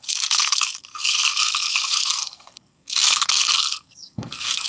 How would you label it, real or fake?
fake